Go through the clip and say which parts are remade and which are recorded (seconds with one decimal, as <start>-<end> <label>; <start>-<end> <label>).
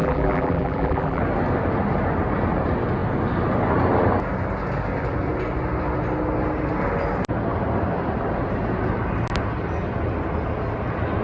0.0-1.2 remade; 1.2-11.2 recorded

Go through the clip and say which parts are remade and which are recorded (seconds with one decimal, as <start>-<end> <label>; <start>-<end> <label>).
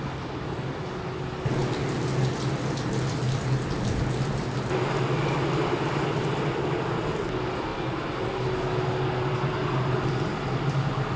0.0-7.7 recorded; 7.7-8.8 remade; 8.8-11.2 recorded